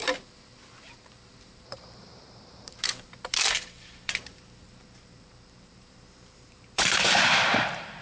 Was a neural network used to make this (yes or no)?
yes